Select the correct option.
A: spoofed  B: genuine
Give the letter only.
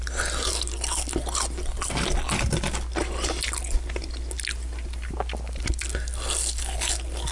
B